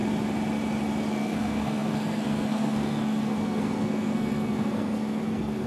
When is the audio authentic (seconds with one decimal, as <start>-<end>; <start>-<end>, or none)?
0.0-1.1